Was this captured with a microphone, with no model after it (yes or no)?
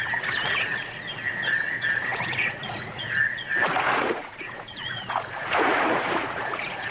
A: no